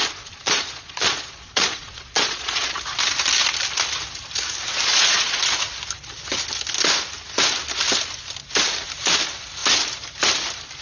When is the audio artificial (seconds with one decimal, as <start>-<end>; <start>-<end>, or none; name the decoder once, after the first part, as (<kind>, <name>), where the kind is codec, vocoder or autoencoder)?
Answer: 0.0-2.7 (vocoder, Vocos); 4.9-5.4